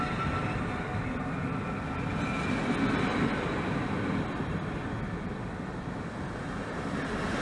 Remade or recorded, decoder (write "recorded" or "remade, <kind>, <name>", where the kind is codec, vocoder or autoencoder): recorded